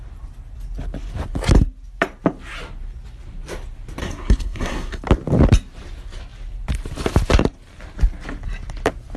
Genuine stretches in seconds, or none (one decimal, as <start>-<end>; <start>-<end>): 0.0-4.0; 5.0-9.2